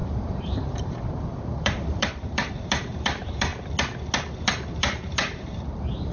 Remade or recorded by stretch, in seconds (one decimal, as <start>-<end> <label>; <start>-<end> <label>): 0.0-3.5 remade; 3.5-4.4 recorded; 4.4-6.1 remade